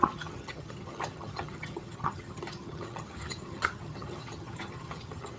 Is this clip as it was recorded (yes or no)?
no